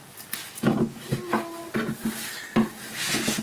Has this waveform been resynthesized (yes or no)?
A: no